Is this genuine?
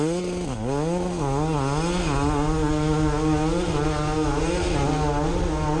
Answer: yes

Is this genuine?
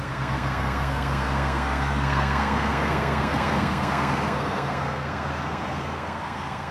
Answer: no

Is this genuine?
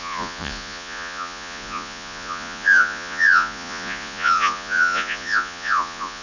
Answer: no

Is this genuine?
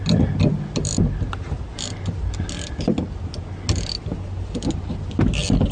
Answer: yes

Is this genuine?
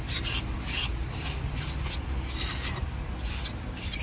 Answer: yes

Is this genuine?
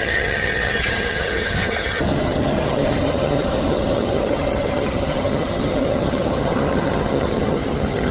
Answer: no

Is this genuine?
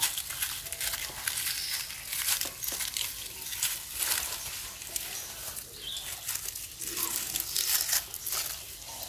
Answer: yes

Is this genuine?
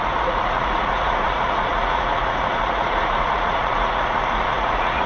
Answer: no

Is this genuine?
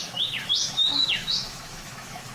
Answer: no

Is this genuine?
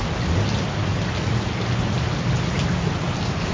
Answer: yes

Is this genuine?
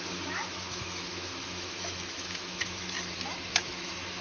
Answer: no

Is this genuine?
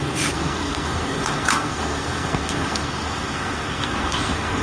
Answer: no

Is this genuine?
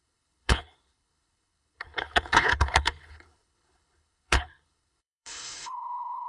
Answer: no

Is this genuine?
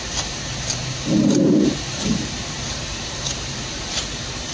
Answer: no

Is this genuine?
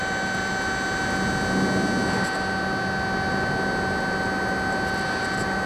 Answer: yes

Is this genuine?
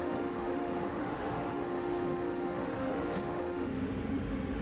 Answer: no